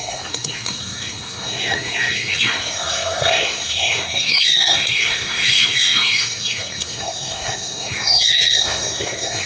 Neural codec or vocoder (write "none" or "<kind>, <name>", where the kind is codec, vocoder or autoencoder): codec, SNAC